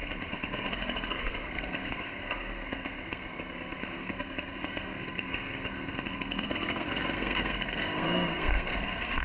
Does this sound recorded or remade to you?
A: remade